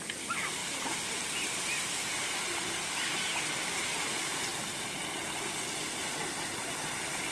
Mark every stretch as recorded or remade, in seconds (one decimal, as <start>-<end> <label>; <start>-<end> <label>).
0.0-7.3 recorded